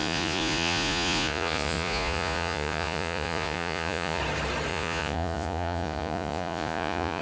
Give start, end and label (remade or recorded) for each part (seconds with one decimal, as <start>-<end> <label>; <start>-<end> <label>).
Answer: 0.0-4.2 remade; 4.2-4.7 recorded; 4.7-7.2 remade